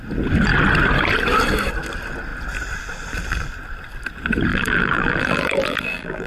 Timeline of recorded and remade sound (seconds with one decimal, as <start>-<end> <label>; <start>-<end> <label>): 0.0-4.5 recorded; 4.5-6.3 remade